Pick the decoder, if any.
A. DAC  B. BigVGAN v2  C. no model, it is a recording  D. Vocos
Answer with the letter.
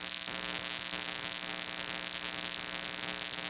C